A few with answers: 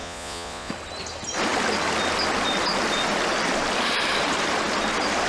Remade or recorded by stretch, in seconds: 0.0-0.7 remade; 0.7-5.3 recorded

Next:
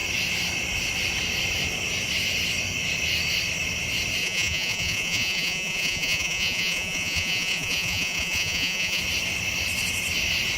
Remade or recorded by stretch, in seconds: 0.0-4.2 recorded; 4.2-9.0 remade; 9.0-10.6 recorded